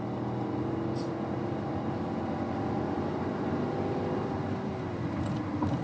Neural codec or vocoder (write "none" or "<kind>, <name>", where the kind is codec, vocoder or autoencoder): none